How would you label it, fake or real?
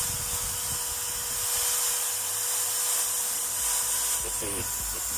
real